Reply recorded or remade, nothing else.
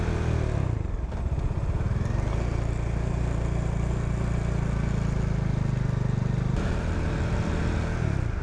recorded